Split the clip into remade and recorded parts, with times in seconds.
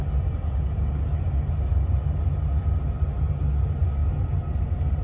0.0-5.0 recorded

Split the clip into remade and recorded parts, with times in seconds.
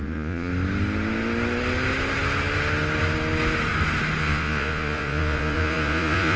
0.0-0.5 remade; 0.5-4.2 recorded; 4.2-6.4 remade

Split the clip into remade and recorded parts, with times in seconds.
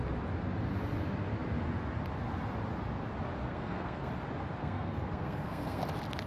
0.0-3.5 recorded; 3.5-4.1 remade; 4.1-4.6 recorded; 4.6-5.8 remade; 5.8-6.3 recorded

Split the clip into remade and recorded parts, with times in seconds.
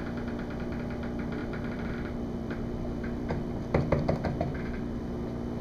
0.0-1.4 recorded; 1.4-3.6 remade; 3.6-4.5 recorded; 4.5-5.0 remade; 5.0-5.6 recorded